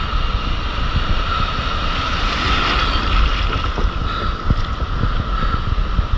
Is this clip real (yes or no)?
yes